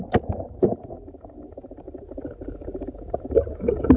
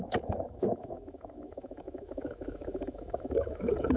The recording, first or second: first